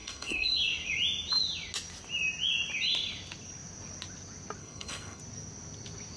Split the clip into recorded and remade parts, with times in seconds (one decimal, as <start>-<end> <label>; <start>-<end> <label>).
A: 0.0-0.6 remade; 0.6-4.6 recorded; 4.6-5.2 remade; 5.2-6.2 recorded